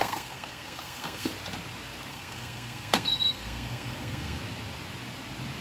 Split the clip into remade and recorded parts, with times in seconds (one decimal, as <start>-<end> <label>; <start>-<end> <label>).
0.0-1.3 remade; 1.3-2.1 recorded; 2.1-4.4 remade; 4.4-5.6 recorded